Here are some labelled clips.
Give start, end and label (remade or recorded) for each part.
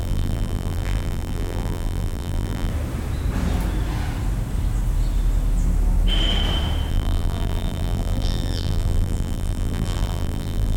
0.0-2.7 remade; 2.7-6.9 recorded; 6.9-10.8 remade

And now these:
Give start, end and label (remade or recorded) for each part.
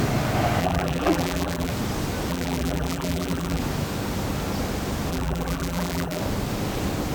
0.0-0.6 recorded; 0.6-1.7 remade; 1.7-2.3 recorded; 2.3-3.6 remade; 3.6-5.1 recorded; 5.1-6.2 remade; 6.2-7.1 recorded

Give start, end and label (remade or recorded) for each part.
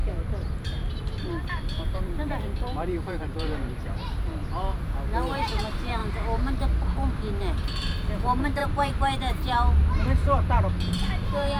0.0-4.5 remade; 4.5-8.6 recorded; 8.6-11.6 remade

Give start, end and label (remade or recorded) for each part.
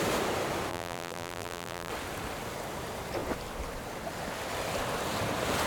0.0-0.7 recorded; 0.7-1.9 remade; 1.9-5.7 recorded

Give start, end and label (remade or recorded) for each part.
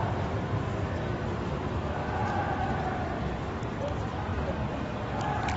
0.0-5.6 remade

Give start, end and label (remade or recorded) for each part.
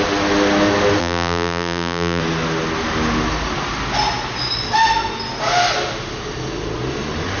0.0-1.0 recorded; 1.0-2.2 remade; 2.2-7.4 recorded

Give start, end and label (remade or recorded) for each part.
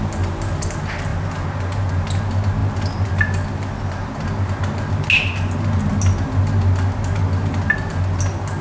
0.0-8.6 recorded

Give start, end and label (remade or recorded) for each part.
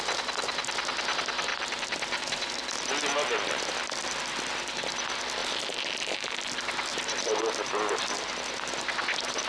0.0-1.5 recorded; 1.5-2.5 remade; 2.5-5.4 recorded; 5.4-6.5 remade; 6.5-9.5 recorded